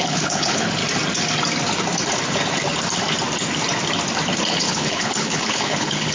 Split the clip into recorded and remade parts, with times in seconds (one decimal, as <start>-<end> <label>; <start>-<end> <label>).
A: 0.0-0.8 remade; 0.8-4.5 recorded; 4.5-6.1 remade